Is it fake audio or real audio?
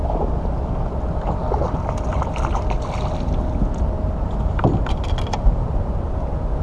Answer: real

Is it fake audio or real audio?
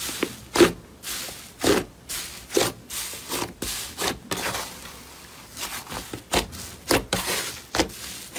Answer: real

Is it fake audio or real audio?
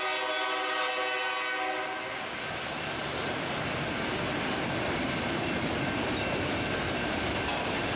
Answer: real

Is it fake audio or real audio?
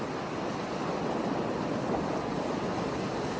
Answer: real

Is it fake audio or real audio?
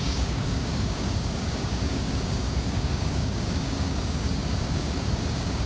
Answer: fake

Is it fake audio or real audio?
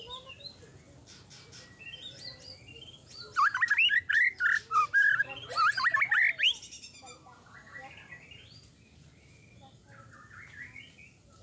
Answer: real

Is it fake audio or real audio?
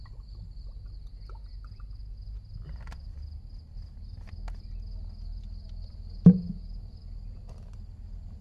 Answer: real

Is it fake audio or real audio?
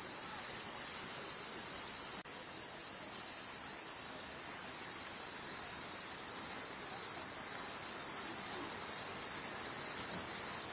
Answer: real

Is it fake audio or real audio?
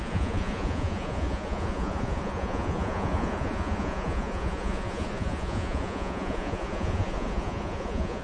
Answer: fake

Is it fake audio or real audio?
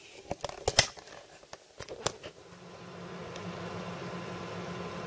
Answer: real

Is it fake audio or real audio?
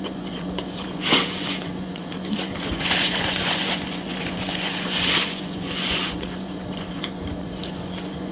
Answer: fake